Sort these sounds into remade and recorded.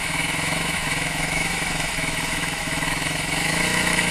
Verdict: remade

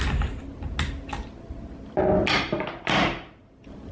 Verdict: recorded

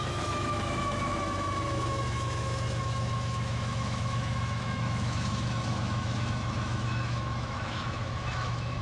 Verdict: remade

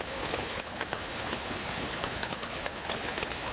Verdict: remade